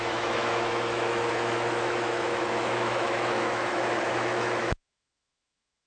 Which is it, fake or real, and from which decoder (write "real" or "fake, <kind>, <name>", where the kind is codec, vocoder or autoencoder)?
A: fake, autoencoder, DAC-VAE